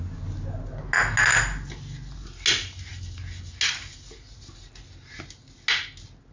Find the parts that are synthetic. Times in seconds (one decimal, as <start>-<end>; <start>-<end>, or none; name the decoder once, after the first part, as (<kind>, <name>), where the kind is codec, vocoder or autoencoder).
none